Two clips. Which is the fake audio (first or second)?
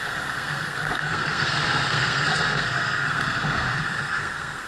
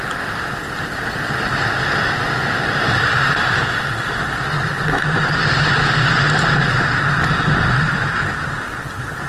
first